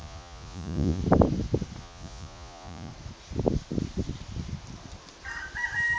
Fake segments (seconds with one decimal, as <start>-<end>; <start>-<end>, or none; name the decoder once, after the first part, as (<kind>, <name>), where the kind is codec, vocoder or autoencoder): 0.0-1.0 (vocoder, Vocos); 1.8-2.9